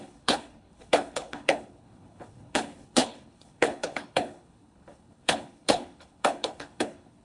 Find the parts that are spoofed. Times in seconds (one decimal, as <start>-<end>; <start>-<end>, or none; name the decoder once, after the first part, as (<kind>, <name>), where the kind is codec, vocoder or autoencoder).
0.0-7.2 (codec, HILCodec)

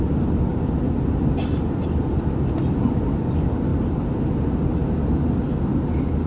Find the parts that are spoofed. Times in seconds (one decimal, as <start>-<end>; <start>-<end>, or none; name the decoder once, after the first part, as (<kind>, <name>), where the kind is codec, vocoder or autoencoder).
none

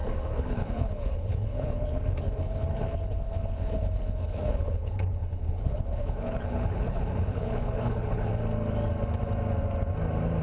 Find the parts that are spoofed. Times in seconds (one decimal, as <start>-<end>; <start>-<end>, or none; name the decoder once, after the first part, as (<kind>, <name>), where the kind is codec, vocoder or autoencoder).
0.0-8.3 (codec, HILCodec)

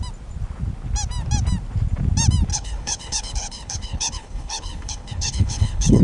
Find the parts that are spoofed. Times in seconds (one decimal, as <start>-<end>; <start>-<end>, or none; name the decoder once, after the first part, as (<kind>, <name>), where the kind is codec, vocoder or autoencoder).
2.5-6.0 (codec, HILCodec)

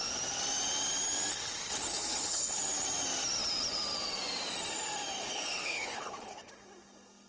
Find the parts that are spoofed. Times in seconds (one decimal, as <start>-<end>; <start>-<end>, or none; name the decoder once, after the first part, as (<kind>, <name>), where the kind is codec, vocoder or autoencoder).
1.9-2.6 (codec, HILCodec); 5.2-6.5

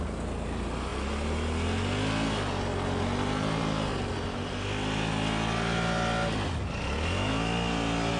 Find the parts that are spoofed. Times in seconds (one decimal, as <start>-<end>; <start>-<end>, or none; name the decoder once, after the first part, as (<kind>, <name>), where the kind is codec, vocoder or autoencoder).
none